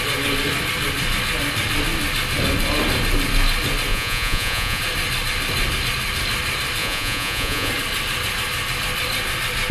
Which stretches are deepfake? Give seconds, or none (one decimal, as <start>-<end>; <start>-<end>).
3.9-4.8; 6.8-7.7